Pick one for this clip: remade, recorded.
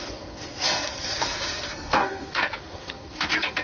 remade